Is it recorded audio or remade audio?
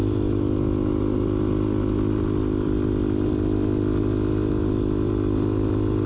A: recorded